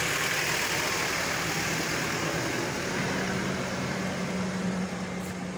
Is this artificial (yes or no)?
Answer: no